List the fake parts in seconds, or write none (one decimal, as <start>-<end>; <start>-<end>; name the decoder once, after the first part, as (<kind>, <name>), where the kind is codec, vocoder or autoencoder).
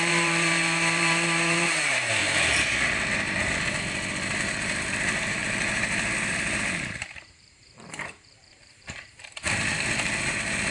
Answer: 0.0-10.7 (vocoder, BigVGAN v2)